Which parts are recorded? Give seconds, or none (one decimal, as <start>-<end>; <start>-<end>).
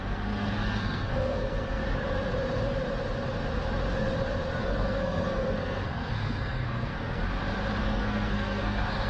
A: 1.8-4.6; 7.2-7.8